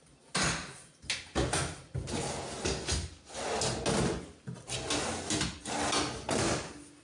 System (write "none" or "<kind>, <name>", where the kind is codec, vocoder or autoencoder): none